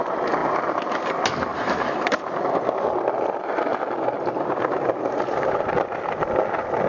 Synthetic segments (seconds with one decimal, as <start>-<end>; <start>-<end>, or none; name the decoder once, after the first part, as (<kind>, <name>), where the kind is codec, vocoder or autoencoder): 0.4-1.1 (vocoder, BigVGAN v2); 1.5-2.7; 3.7-6.0